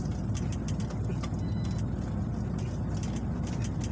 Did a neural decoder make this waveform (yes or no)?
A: no